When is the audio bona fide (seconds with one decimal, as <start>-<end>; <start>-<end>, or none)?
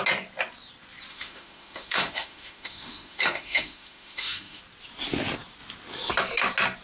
0.0-1.1; 4.6-6.8